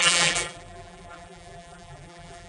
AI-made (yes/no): yes